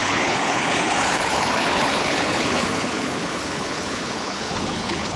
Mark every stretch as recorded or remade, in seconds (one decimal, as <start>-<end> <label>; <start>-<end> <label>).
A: 0.0-5.2 remade